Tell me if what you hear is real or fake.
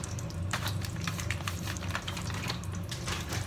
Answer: fake